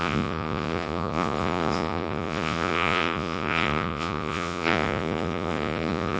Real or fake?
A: fake